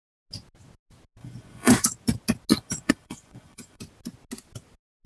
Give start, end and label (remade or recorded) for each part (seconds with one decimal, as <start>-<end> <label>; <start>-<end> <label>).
0.0-1.2 recorded; 1.2-1.7 remade; 1.7-2.5 recorded; 2.5-3.8 remade; 3.8-5.1 recorded